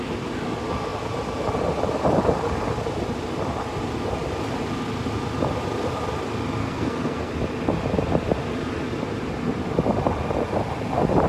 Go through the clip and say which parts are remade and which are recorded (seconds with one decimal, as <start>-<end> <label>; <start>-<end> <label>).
0.0-6.6 recorded; 6.6-7.3 remade; 7.3-11.3 recorded